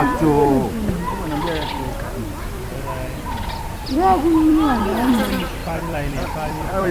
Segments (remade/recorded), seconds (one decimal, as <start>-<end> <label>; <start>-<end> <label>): 0.0-4.5 recorded; 4.5-5.1 remade; 5.1-5.6 recorded; 5.6-6.9 remade